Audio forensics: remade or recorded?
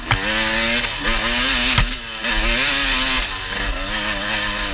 recorded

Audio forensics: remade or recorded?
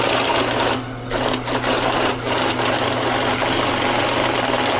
recorded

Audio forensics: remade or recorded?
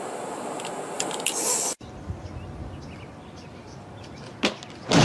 recorded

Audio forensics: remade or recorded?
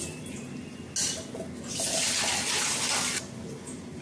recorded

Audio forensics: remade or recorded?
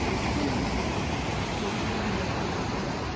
recorded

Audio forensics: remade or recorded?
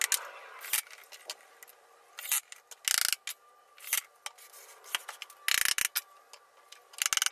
recorded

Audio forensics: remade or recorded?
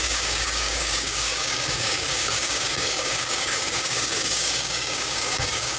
remade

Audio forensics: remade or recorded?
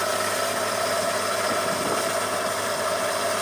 recorded